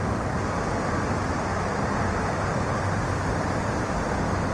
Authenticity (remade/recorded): recorded